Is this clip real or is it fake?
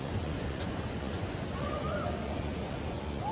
fake